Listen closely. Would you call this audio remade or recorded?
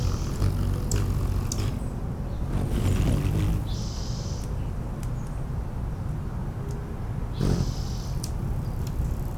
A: recorded